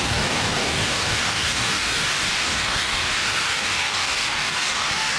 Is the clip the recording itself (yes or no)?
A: no